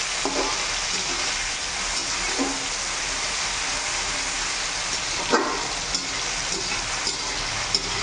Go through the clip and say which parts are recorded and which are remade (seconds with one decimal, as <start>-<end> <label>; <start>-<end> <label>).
0.0-8.0 recorded